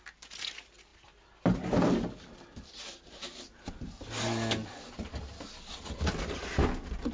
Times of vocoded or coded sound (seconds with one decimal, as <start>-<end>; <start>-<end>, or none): none